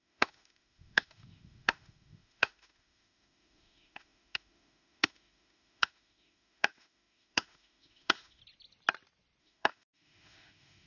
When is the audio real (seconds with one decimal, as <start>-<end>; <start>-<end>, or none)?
8.4-9.4